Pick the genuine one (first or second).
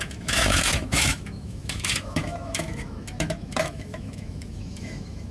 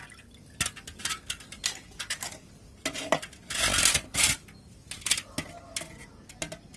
second